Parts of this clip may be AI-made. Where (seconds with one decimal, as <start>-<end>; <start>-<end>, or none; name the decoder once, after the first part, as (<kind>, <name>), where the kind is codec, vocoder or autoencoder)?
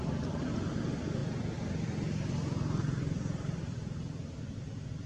none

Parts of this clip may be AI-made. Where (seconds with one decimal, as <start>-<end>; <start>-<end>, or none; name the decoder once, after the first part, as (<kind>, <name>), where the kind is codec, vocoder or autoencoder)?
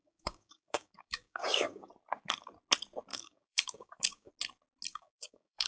0.0-1.9 (codec, DAC); 3.1-4.3; 4.9-5.7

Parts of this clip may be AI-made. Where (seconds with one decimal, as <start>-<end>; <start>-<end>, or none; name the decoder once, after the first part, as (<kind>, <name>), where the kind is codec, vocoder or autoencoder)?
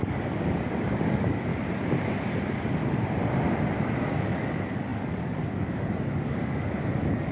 0.0-1.5 (codec, DAC); 4.0-7.3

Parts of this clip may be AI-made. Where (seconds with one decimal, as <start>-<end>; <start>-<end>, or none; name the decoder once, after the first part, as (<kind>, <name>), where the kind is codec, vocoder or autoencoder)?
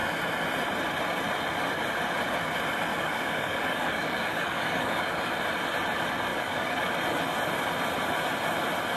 2.9-5.3 (codec, DAC); 6.3-6.9